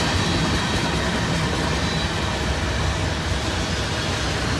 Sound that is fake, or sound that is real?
real